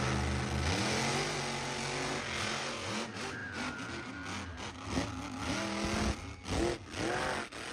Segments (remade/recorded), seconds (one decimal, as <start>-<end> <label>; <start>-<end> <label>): 0.0-7.7 recorded